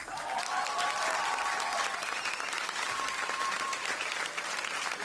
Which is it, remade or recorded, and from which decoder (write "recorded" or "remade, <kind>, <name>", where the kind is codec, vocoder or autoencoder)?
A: recorded